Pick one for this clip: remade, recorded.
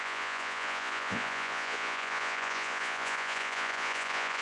remade